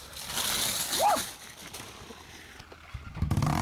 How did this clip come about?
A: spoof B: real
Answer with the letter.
B